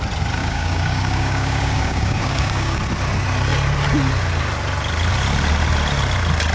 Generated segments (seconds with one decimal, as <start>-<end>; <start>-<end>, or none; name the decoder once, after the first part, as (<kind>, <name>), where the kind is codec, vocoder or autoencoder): 0.4-2.8 (codec, DAC)